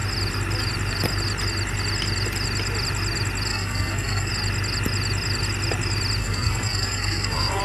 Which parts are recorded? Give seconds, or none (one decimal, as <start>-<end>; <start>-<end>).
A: 0.0-3.5; 4.3-6.2

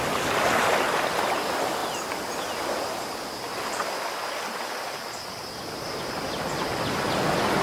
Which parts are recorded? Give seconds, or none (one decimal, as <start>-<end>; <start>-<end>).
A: 0.0-7.6

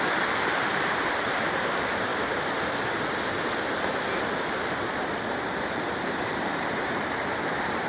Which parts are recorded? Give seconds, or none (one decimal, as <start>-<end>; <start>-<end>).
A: 2.1-5.6

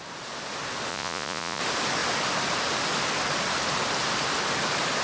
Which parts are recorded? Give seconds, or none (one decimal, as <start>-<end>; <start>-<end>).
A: 0.0-0.9; 1.6-5.0